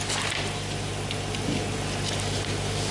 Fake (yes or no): no